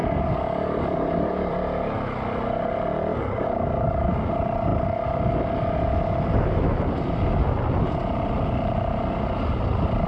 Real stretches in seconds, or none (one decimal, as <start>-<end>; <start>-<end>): 1.5-3.1; 4.1-10.1